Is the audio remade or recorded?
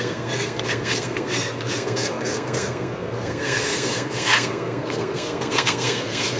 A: remade